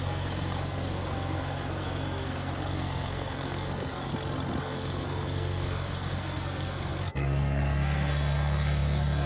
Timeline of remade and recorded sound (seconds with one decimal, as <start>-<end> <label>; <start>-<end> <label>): 0.0-4.1 remade; 4.1-4.6 recorded; 4.6-9.3 remade

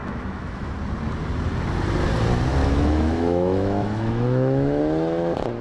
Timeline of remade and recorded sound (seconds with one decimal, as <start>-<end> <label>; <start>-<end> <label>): 0.0-0.7 remade; 0.7-2.6 recorded; 2.6-4.8 remade; 4.8-5.6 recorded

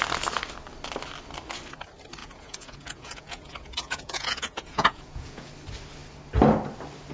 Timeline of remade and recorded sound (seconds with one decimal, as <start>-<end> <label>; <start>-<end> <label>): 0.0-2.2 recorded; 2.2-5.5 remade; 5.5-7.1 recorded

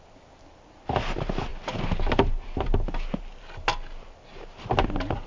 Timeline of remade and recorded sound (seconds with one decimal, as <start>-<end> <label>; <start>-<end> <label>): 0.0-5.3 recorded

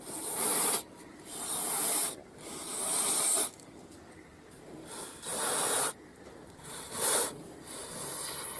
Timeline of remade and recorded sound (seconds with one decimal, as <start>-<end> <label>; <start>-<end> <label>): 0.0-8.6 recorded

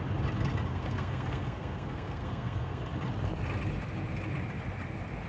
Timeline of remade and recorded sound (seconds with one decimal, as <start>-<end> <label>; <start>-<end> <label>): 0.0-0.7 recorded; 0.7-2.8 remade; 2.8-5.3 recorded